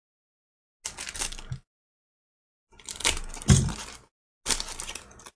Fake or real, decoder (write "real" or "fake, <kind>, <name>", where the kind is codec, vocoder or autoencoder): real